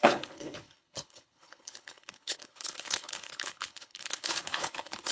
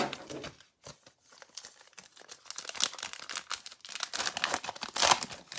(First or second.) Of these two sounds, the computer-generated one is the first